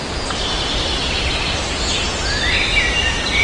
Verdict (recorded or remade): recorded